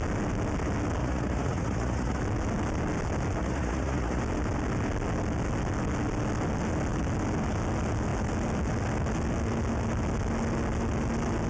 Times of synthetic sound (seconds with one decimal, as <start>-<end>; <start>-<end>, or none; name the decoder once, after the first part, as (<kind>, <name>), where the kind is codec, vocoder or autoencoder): 1.0-2.2 (vocoder, Vocos); 3.4-4.2

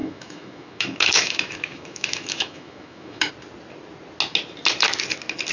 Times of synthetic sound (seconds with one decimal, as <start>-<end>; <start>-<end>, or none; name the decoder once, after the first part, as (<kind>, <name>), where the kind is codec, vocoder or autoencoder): 0.0-3.3 (autoencoder, DAC-VAE)

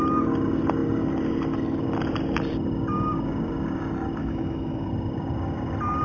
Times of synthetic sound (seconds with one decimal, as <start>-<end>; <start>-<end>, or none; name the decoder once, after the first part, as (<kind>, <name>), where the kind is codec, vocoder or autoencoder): 4.2-4.9 (autoencoder, DAC-VAE)

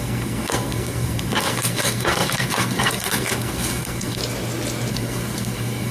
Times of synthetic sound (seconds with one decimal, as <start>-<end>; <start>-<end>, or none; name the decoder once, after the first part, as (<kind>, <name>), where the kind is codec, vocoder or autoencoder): 0.0-4.2 (codec, SNAC); 4.9-5.9

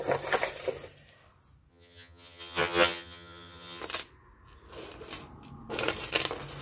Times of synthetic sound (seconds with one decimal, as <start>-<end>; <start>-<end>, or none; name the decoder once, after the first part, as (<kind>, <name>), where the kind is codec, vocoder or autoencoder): 1.7-3.8 (vocoder, HiFi-GAN)

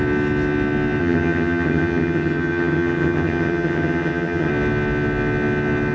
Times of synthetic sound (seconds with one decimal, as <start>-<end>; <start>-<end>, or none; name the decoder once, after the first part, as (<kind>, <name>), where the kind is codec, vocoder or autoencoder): 1.0-4.5 (vocoder, HiFi-GAN)